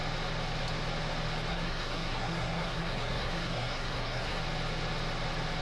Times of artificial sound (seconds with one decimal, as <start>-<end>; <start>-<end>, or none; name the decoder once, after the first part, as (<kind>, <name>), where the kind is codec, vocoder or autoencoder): 1.5-4.4 (codec, SNAC)

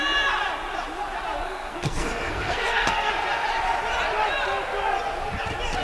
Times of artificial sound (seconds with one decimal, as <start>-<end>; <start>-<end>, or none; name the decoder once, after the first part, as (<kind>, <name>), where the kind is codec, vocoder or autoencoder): 1.4-3.1 (codec, SNAC)

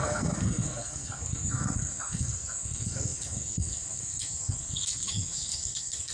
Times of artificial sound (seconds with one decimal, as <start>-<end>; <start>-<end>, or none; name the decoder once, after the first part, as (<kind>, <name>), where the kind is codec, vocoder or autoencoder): 0.0-6.1 (codec, SNAC)

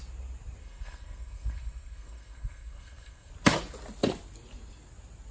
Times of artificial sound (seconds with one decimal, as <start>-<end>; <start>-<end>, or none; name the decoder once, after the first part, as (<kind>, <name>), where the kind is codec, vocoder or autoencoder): 0.6-3.3 (codec, SNAC)

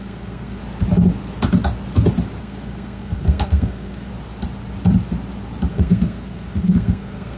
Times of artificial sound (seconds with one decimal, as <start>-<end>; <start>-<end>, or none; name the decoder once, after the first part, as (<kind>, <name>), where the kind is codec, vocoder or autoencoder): 0.0-0.6 (codec, SNAC); 2.4-4.1; 5.7-7.4

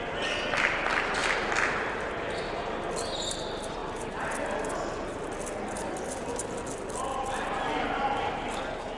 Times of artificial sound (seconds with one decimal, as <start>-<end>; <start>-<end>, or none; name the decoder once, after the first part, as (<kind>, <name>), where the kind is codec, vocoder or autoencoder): none

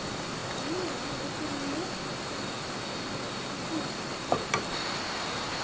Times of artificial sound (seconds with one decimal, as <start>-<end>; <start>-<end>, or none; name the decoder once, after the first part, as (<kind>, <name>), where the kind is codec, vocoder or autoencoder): none